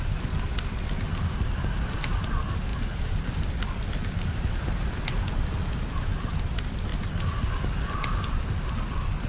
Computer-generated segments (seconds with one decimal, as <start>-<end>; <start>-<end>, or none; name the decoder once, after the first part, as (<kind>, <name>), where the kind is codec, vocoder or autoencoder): none